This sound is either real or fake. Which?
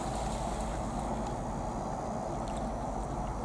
real